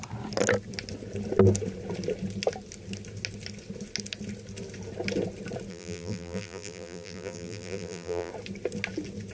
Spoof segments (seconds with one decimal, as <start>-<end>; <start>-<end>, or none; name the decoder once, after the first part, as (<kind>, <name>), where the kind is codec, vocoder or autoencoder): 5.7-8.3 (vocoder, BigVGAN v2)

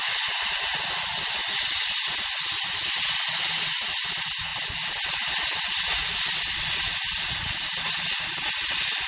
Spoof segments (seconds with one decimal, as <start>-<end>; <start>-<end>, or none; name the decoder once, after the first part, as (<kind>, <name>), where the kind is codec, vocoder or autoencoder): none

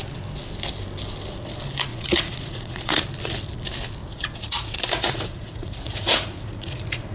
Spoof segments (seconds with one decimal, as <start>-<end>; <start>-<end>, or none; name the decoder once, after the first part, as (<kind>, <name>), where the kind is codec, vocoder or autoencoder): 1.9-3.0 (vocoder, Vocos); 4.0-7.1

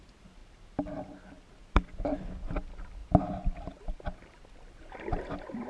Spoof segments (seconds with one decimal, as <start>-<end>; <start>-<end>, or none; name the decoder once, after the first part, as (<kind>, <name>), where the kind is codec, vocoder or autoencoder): none

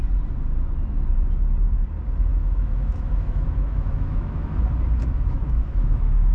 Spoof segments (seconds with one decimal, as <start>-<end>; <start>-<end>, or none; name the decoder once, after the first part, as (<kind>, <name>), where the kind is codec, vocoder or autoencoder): 2.3-4.6 (autoencoder, DAC-VAE); 5.0-6.3